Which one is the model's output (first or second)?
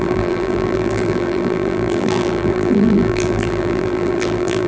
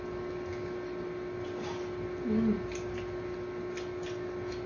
first